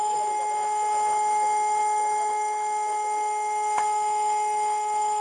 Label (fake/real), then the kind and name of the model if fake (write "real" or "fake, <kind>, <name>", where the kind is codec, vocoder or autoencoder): fake, autoencoder, DAC-VAE